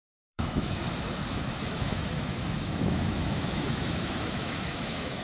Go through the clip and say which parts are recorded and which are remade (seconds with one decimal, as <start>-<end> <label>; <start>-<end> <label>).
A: 0.0-0.8 remade; 0.8-1.3 recorded; 1.3-5.2 remade

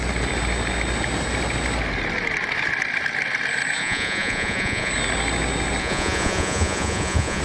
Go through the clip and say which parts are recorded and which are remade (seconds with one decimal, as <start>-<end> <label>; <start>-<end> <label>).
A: 0.0-3.8 recorded; 3.8-4.9 remade; 4.9-5.8 recorded; 5.8-7.4 remade

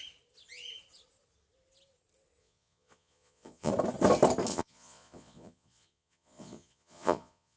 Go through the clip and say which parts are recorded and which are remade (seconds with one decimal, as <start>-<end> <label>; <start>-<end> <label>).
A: 0.0-2.4 recorded; 2.4-3.7 remade; 3.7-4.5 recorded; 4.5-7.6 remade

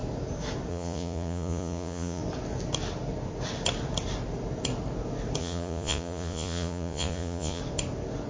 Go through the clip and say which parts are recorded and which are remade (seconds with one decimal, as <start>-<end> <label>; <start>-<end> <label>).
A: 0.0-0.7 recorded; 0.7-2.2 remade; 2.2-5.4 recorded; 5.4-7.6 remade; 7.6-8.3 recorded

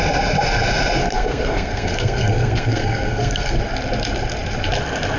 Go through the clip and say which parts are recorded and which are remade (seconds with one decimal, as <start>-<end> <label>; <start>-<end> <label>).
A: 0.0-1.0 recorded; 1.0-3.6 remade; 3.6-5.2 recorded

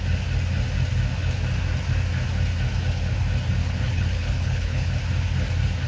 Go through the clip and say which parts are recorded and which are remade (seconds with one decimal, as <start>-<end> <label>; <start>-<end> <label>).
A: 0.0-3.6 recorded; 3.6-4.9 remade; 4.9-5.9 recorded

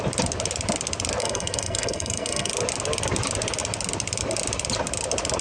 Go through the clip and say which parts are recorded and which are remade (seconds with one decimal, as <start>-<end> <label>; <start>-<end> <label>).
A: 0.0-1.2 recorded; 1.2-2.5 remade; 2.5-5.4 recorded